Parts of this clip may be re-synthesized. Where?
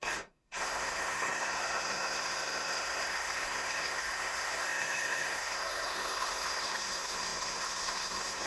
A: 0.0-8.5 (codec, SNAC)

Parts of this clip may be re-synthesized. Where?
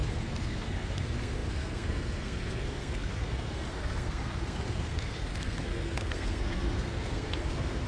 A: 0.0-7.9 (codec, SNAC)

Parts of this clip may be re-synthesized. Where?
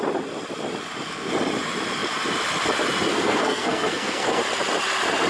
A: 3.1-4.4 (codec, SNAC)